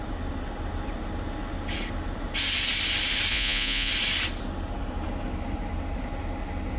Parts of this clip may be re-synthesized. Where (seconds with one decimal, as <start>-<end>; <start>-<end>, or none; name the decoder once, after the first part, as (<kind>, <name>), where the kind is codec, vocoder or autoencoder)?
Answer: 3.3-3.9 (vocoder, Vocos)